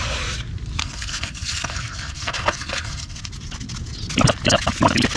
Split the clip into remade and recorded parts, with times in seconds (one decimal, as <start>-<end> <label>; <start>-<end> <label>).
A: 0.0-0.8 recorded; 0.8-3.3 remade; 3.3-5.2 recorded